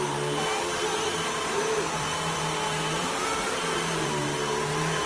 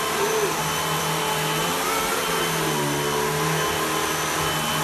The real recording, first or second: second